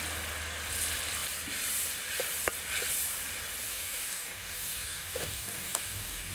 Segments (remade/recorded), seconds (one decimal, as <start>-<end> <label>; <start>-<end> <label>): 0.0-3.7 recorded; 3.7-6.3 remade